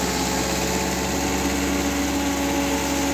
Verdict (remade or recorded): recorded